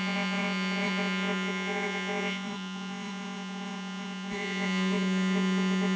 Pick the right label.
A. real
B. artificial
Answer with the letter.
B